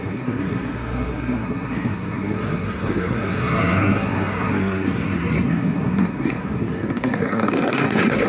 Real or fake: fake